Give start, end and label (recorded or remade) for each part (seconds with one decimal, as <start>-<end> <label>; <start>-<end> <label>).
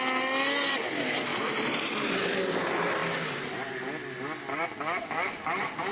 0.0-1.3 recorded; 1.3-2.0 remade; 2.0-5.9 recorded